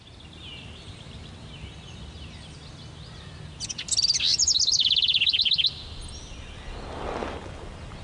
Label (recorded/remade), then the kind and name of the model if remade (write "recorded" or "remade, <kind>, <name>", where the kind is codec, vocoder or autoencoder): recorded